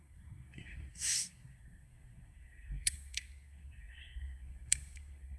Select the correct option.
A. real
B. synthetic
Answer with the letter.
B